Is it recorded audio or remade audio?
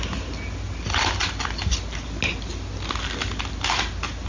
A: recorded